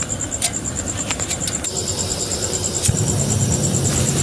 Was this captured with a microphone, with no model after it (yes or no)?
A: no